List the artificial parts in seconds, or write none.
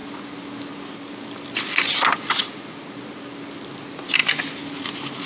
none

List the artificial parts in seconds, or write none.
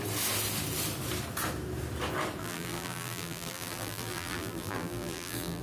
2.4-5.6 (vocoder, BigVGAN v2)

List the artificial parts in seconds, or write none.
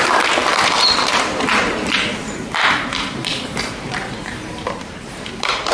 0.0-5.7 (vocoder, BigVGAN v2)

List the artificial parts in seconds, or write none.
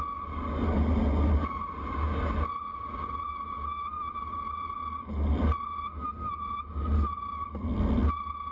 none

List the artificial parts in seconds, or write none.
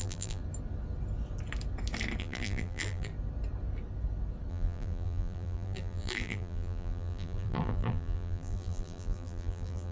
0.0-0.4 (vocoder, BigVGAN v2); 2.2-3.1; 4.5-9.9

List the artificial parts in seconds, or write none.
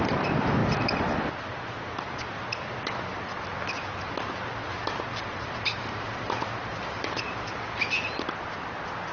5.1-7.5 (vocoder, BigVGAN v2)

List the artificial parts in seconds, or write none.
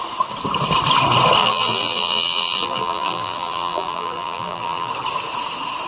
1.4-4.9 (vocoder, BigVGAN v2)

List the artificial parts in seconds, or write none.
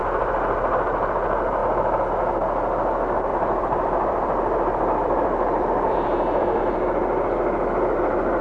0.0-1.1 (vocoder, BigVGAN v2); 3.3-6.6